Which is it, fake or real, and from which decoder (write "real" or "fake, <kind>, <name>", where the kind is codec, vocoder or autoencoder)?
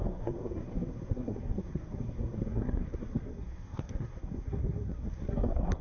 fake, codec, SNAC